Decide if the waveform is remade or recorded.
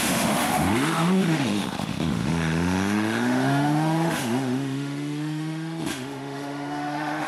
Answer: remade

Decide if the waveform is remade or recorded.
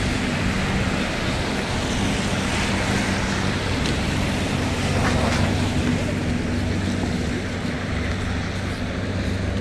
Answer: recorded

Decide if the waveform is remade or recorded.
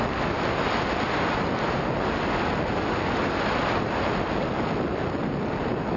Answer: recorded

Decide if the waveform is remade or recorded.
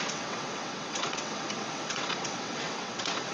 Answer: remade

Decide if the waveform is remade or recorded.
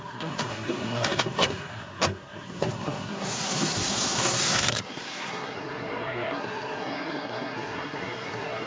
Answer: remade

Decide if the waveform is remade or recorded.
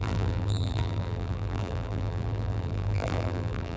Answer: remade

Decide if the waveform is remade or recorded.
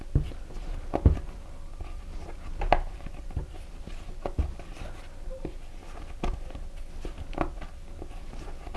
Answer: recorded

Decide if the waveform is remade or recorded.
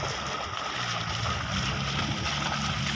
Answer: recorded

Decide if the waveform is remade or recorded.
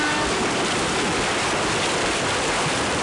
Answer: recorded